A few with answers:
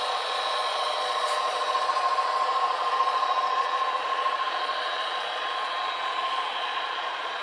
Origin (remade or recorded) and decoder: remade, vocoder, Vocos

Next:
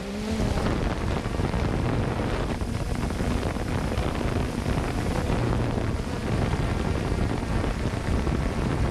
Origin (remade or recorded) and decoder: remade, vocoder, BigVGAN v2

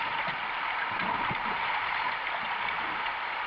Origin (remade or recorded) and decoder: recorded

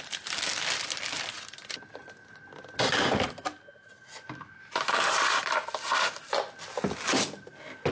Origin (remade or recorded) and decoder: recorded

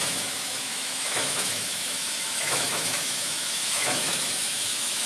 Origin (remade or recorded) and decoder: remade, autoencoder, DAC-VAE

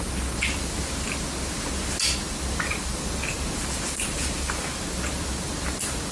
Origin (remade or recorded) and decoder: recorded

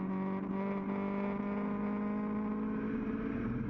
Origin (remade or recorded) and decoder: recorded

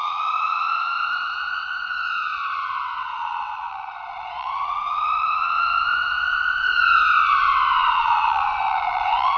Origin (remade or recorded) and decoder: remade, vocoder, WaveNeXt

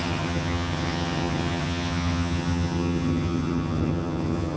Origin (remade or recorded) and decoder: remade, vocoder, HiFi-GAN